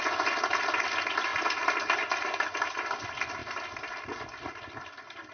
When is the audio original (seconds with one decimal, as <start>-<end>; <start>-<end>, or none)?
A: 0.0-5.3